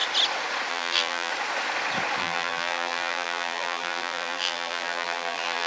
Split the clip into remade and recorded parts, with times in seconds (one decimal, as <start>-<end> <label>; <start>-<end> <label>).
0.0-0.7 recorded; 0.7-1.3 remade; 1.3-2.2 recorded; 2.2-5.7 remade